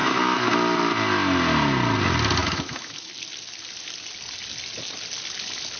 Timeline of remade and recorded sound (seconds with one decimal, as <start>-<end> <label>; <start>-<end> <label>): 0.0-0.5 remade; 0.5-2.4 recorded; 2.4-3.1 remade; 3.1-5.8 recorded